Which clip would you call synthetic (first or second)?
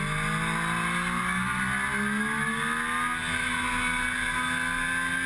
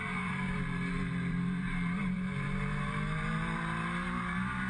second